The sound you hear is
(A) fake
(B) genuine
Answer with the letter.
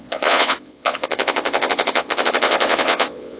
A